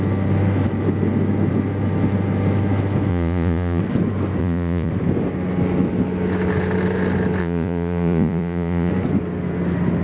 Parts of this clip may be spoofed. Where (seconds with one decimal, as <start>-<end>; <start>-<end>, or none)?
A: 3.1-3.8; 4.4-4.9; 7.4-8.9